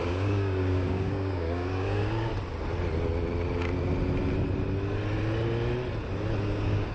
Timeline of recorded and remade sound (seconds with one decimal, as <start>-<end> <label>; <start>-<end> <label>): 0.0-2.3 remade; 2.3-6.4 recorded; 6.4-6.9 remade